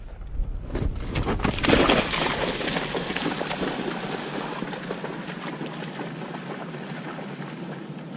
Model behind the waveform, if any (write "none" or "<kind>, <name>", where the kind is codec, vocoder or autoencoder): none